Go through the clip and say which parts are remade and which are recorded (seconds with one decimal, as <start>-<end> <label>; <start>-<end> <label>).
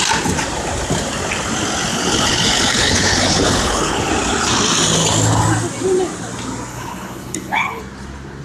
0.0-1.9 recorded; 1.9-4.1 remade; 4.1-6.7 recorded; 6.7-7.8 remade; 7.8-8.4 recorded